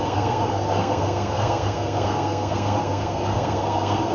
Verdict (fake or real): fake